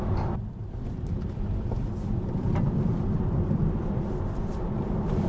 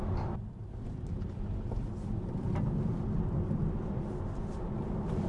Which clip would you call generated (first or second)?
first